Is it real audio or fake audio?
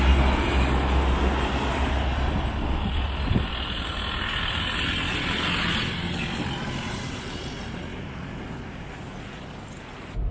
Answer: real